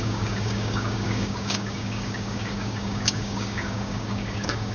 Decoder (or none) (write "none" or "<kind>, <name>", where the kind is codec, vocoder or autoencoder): codec, DAC